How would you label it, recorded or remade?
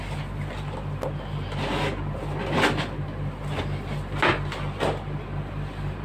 recorded